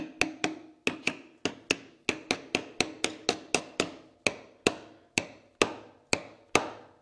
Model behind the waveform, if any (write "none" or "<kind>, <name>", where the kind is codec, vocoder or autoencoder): none